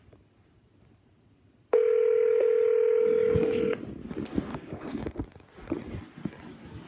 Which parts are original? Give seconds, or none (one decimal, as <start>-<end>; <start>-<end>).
0.0-4.5; 5.1-6.9